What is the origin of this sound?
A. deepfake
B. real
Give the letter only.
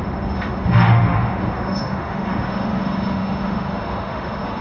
A